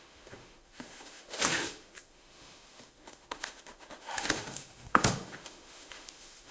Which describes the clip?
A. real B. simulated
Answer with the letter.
B